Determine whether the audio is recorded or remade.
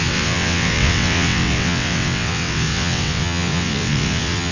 remade